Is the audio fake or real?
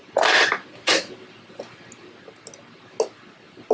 real